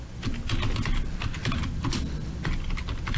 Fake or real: real